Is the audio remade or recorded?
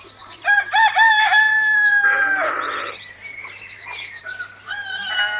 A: remade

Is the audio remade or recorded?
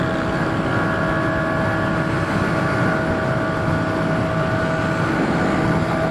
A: recorded